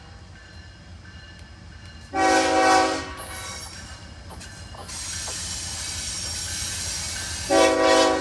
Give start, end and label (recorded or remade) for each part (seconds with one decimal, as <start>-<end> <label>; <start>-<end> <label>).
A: 0.0-8.2 recorded